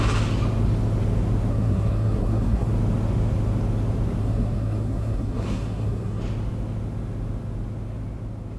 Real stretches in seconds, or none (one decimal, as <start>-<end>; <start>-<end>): 0.0-1.5; 2.7-4.2; 6.2-8.6